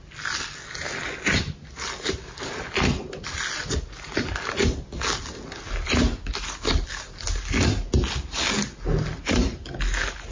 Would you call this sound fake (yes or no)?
no